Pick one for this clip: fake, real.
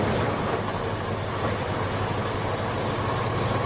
real